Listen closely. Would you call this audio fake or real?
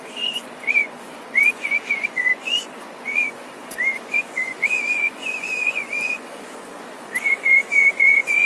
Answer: fake